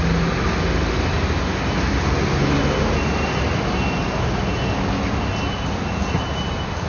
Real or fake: real